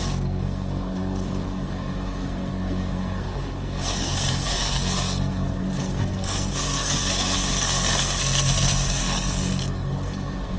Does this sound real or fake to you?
fake